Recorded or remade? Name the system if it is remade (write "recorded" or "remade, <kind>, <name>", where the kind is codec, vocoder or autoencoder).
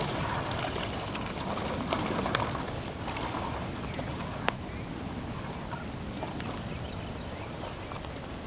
recorded